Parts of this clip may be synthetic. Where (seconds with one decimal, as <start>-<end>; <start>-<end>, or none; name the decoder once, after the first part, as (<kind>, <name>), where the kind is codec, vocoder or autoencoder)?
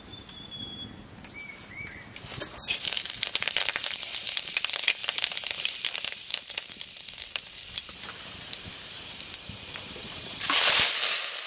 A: 0.0-11.5 (vocoder, BigVGAN v2)